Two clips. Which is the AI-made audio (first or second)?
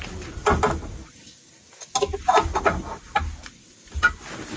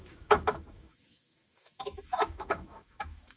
second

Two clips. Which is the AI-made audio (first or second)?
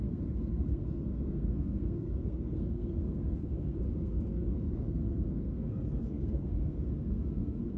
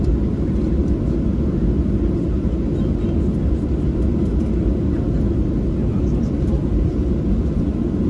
first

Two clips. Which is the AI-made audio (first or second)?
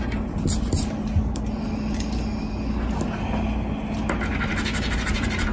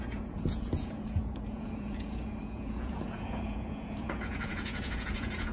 second